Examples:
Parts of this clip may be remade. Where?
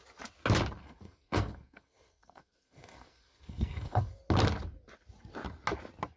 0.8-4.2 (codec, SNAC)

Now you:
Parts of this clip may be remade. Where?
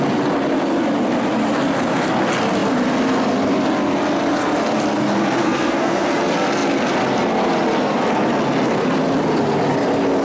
5.4-6.1 (codec, SNAC)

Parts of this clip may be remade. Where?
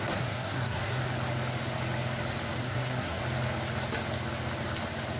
0.0-1.0 (codec, SNAC); 2.6-3.2